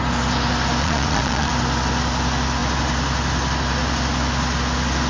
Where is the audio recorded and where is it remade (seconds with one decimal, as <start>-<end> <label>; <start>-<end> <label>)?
0.0-0.8 recorded; 0.8-1.5 remade; 1.5-5.1 recorded